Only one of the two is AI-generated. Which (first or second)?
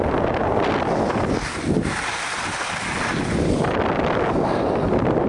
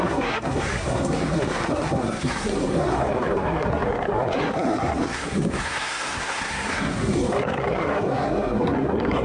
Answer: second